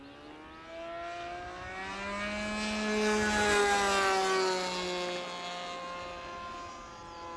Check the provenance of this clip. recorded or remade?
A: recorded